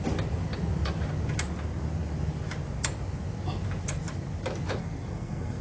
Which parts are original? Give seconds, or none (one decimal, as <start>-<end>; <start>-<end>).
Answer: 0.0-4.8